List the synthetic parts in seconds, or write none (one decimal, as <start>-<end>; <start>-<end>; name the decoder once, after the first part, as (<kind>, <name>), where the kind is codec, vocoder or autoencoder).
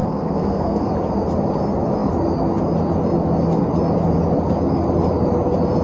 0.0-0.9 (codec, SNAC)